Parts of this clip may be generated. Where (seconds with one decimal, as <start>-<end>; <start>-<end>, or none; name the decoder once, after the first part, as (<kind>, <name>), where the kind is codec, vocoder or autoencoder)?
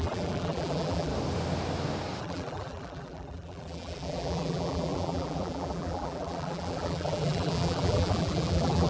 0.0-1.1 (vocoder, BigVGAN v2); 2.2-8.9